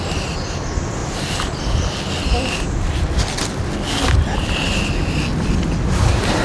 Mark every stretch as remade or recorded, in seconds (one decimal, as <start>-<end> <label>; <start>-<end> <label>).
0.0-6.4 recorded